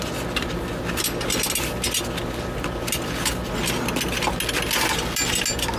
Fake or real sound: real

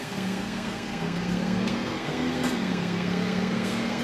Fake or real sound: fake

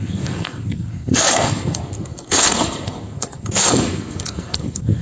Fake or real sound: fake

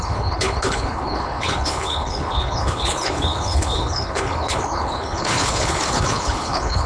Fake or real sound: fake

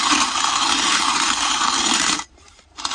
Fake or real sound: fake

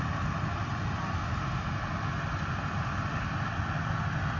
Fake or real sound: real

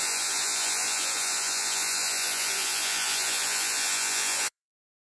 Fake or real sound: fake